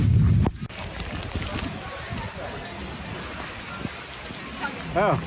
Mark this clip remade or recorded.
recorded